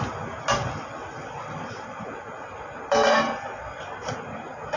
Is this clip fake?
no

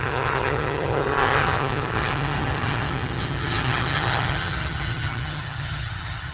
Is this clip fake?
yes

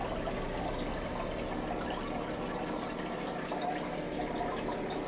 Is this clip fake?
no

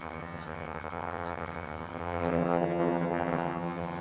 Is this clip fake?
yes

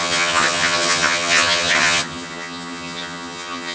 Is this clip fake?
yes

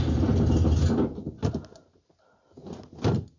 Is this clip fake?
no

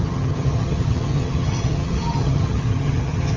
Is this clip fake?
yes